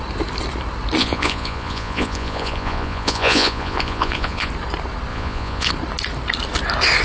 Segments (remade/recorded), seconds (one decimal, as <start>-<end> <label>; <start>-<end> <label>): 0.0-1.0 recorded; 1.0-4.5 remade; 4.5-5.1 recorded; 5.1-5.7 remade; 5.7-7.0 recorded